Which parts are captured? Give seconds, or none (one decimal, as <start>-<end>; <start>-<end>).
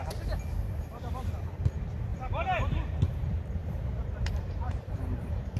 0.0-2.1; 2.7-3.6